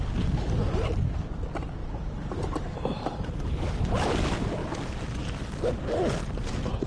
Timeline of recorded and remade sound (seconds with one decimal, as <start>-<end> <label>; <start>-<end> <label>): 0.0-1.8 recorded; 1.8-3.8 remade; 3.8-6.9 recorded